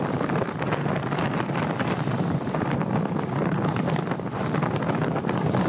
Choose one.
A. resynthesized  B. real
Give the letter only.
B